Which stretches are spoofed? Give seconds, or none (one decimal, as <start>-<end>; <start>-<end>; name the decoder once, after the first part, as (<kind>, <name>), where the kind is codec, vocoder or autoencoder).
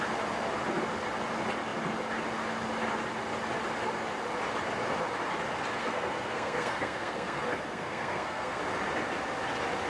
5.8-8.6 (codec, SNAC)